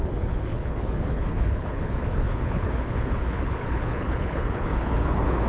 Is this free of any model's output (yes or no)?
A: no